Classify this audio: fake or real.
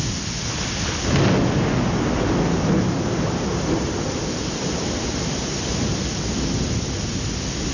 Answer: real